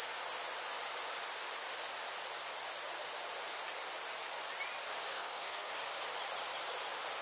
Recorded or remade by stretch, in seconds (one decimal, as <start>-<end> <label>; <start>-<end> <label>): 0.0-5.1 recorded; 5.1-5.7 remade; 5.7-7.2 recorded